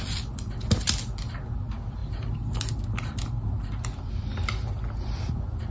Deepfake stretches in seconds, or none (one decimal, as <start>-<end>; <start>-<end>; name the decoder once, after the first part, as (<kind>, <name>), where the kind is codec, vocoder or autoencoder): none

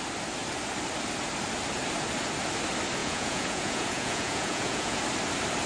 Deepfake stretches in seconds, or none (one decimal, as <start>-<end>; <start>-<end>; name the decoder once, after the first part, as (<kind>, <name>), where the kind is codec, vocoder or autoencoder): 3.0-5.0 (vocoder, Vocos)

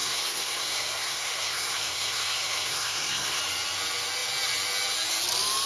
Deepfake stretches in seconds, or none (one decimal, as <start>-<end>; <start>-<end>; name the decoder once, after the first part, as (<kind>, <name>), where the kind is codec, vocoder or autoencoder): 0.0-3.4 (codec, SNAC)

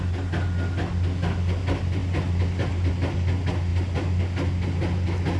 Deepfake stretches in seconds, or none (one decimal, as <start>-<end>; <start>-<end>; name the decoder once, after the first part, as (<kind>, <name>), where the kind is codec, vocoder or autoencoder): none

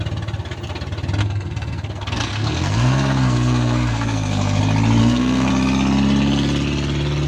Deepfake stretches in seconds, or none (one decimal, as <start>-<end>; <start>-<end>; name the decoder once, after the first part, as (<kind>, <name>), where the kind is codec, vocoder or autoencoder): 1.2-4.6 (codec, SNAC); 5.0-5.5

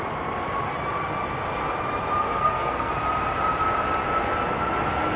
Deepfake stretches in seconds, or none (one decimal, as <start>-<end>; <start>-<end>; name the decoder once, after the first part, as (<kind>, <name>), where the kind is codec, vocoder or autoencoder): 2.2-2.9 (codec, SNAC)